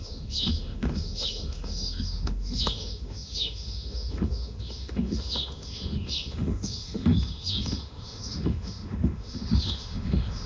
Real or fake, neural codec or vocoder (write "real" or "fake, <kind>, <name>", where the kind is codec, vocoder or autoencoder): fake, autoencoder, DAC-VAE